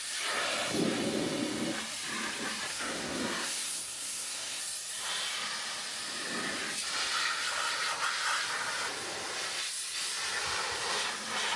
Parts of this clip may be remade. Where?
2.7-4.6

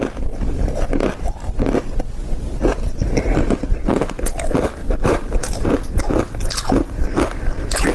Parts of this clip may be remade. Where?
4.8-5.7